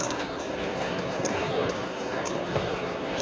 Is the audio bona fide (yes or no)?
no